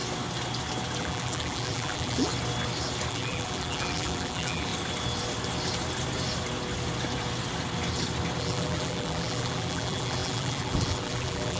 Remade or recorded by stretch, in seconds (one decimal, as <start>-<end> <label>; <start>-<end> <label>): 0.0-1.0 recorded; 1.0-2.3 remade; 2.3-3.1 recorded; 3.1-4.7 remade; 4.7-8.4 recorded; 8.4-11.6 remade